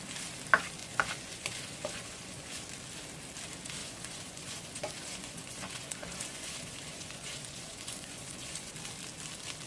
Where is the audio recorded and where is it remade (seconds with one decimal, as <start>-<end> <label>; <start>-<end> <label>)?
0.0-0.8 recorded; 0.8-2.6 remade; 2.6-3.8 recorded; 3.8-8.7 remade; 8.7-9.7 recorded